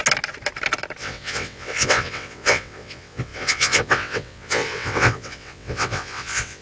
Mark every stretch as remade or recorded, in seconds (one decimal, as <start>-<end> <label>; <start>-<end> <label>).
0.0-1.0 recorded; 1.0-6.6 remade